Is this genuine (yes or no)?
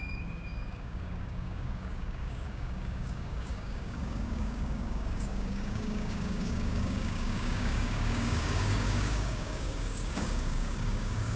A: no